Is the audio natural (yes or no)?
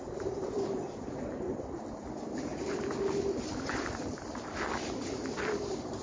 no